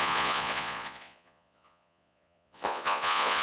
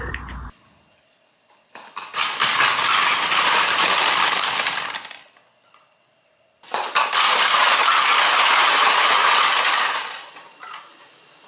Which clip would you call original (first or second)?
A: second